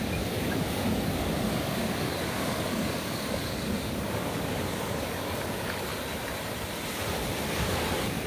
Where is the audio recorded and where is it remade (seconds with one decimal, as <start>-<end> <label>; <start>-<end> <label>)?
0.0-5.9 remade; 5.9-7.5 recorded; 7.5-8.3 remade